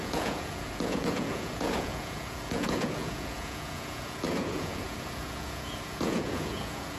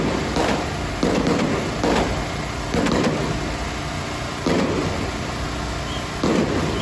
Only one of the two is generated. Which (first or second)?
first